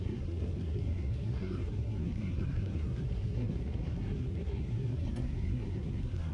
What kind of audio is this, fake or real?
fake